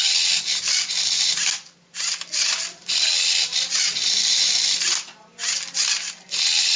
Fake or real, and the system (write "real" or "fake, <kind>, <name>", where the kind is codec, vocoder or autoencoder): real